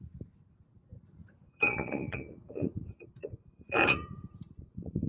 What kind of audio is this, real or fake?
fake